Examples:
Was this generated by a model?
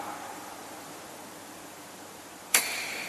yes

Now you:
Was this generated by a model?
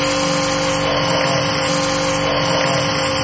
no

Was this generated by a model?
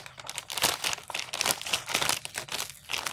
no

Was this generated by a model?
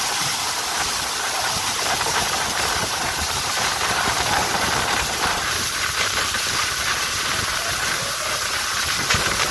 yes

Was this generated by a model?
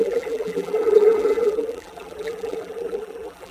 yes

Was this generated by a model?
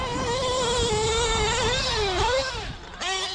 no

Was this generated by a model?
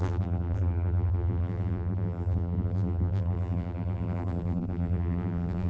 yes